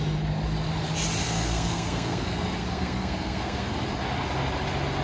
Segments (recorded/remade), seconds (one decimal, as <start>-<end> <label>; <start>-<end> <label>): 0.0-1.2 recorded; 1.2-3.7 remade; 3.7-5.0 recorded